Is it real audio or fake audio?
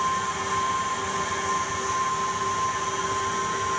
real